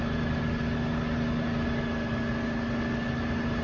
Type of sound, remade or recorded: recorded